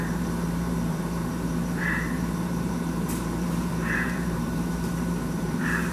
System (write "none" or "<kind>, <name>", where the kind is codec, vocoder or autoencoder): vocoder, BigVGAN v2